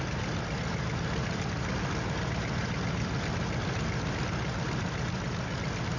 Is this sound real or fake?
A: real